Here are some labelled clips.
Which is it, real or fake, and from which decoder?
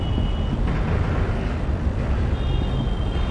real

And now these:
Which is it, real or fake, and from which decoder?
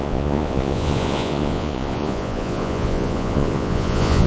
fake, vocoder, Vocos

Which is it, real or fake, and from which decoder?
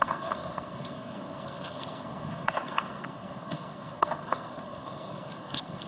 fake, codec, SNAC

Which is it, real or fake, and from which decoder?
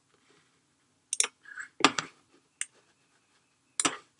real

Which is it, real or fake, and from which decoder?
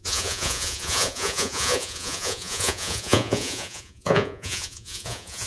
fake, vocoder, Vocos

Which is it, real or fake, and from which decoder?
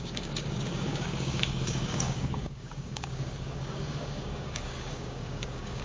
fake, codec, DAC